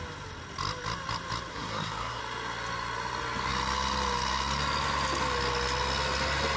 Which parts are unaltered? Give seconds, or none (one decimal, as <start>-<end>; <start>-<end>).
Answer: 0.0-1.5; 2.2-6.6